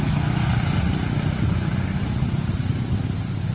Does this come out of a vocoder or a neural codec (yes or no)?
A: no